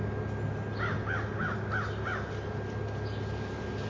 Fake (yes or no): no